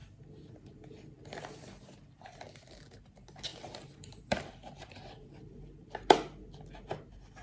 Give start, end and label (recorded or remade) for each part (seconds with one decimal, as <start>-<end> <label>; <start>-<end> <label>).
0.0-3.5 recorded; 3.5-5.4 remade; 5.4-7.4 recorded